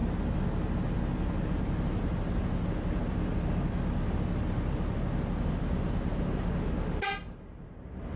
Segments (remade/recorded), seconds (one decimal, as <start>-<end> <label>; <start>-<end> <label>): 0.0-8.2 recorded